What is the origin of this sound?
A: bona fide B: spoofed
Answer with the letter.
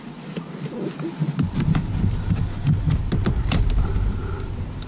A